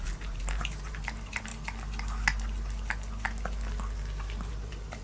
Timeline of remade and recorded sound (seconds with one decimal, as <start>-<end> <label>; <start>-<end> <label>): 0.0-1.5 remade; 1.5-4.5 recorded; 4.5-5.0 remade